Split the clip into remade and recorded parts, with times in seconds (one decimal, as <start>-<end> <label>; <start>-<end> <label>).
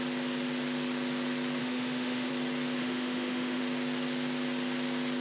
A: 0.0-1.6 recorded; 1.6-2.3 remade; 2.3-2.8 recorded; 2.8-3.6 remade; 3.6-5.2 recorded